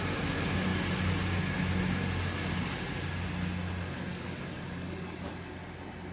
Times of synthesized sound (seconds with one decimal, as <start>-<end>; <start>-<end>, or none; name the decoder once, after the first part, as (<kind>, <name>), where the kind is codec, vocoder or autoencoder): 4.1-5.3 (codec, DAC)